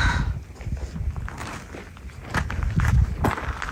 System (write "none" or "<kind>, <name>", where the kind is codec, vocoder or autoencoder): none